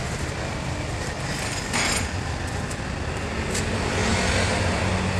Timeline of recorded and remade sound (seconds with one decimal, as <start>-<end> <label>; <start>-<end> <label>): 0.0-5.2 recorded